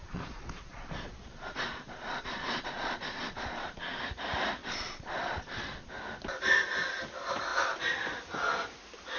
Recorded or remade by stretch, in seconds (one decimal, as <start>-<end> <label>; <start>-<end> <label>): 0.0-4.0 remade; 4.0-4.6 recorded; 4.6-5.9 remade; 5.9-9.2 recorded